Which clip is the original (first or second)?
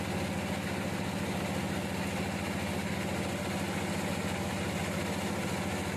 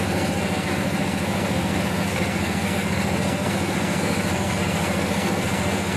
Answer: first